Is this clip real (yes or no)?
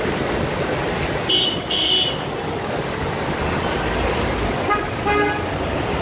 yes